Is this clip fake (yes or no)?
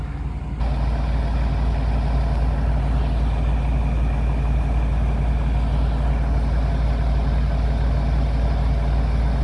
no